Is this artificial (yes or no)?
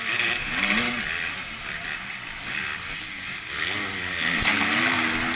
no